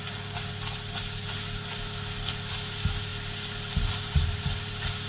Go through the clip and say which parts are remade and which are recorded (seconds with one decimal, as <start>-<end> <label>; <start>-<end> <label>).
0.0-5.1 recorded